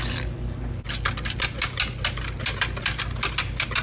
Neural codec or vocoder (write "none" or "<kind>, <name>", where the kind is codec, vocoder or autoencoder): none